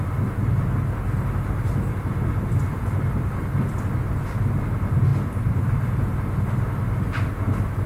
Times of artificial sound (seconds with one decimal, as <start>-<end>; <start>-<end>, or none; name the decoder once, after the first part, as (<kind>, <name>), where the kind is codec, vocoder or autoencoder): none